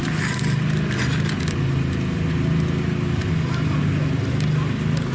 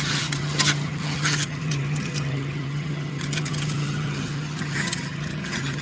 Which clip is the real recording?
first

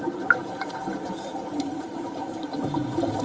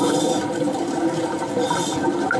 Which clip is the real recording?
second